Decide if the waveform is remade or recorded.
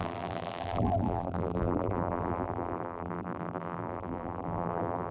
remade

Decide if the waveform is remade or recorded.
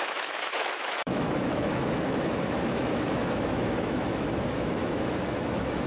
remade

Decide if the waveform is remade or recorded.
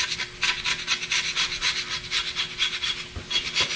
recorded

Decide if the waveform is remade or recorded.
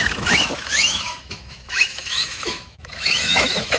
remade